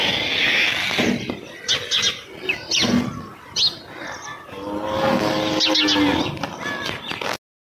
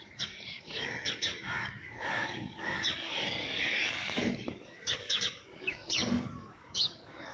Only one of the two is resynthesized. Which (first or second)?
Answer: second